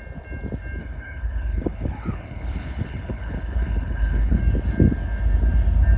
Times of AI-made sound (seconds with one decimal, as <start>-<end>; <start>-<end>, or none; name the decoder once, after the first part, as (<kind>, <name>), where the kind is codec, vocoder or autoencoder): 0.8-4.4 (codec, HILCodec)